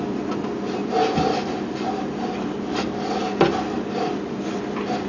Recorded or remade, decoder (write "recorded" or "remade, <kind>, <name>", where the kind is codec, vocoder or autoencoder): recorded